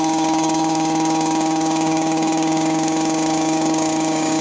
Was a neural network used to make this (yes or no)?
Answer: yes